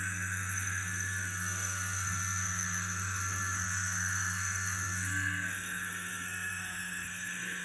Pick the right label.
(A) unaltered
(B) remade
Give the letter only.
B